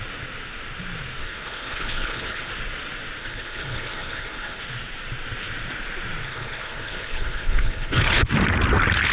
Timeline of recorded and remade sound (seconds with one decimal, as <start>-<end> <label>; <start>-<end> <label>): 0.0-1.2 recorded; 1.2-2.5 remade; 2.5-3.2 recorded; 3.2-4.6 remade; 4.6-6.3 recorded; 6.3-8.3 remade; 8.3-9.1 recorded